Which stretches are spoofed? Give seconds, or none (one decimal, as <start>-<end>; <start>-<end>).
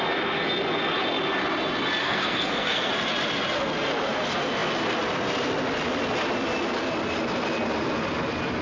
2.0-2.9